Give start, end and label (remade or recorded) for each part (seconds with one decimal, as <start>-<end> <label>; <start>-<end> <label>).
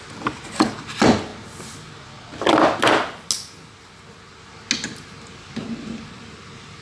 0.0-6.8 recorded